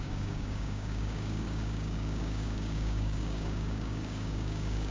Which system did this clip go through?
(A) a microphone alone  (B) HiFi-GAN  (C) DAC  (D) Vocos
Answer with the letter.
C